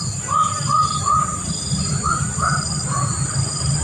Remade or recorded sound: recorded